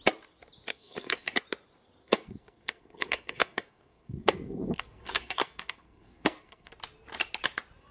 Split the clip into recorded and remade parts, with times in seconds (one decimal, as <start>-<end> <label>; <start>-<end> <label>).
0.0-0.7 recorded; 0.7-1.4 remade; 1.4-2.0 recorded; 2.0-6.7 remade; 6.7-7.9 recorded